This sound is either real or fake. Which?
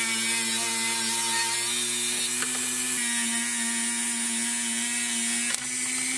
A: real